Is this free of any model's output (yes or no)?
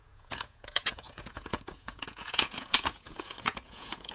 no